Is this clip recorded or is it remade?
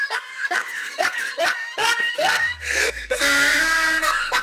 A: remade